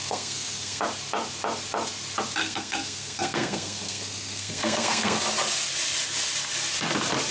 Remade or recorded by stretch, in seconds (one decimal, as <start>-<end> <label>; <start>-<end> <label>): 0.0-0.8 remade; 0.8-2.4 recorded; 2.4-5.2 remade; 5.2-7.3 recorded